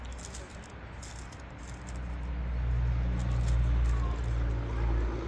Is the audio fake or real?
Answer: real